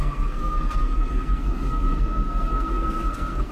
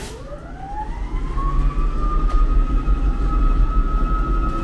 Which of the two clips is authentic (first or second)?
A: second